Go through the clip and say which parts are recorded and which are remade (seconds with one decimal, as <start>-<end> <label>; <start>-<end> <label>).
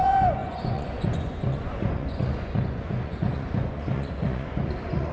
0.0-5.1 remade